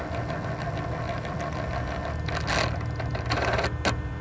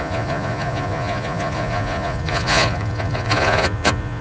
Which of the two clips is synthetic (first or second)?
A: second